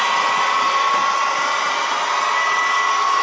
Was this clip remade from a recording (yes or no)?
no